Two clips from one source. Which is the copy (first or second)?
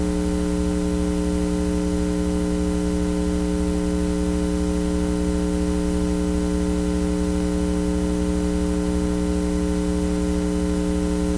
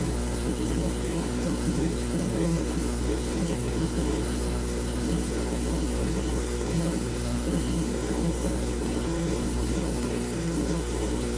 second